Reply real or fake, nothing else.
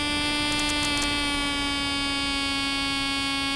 real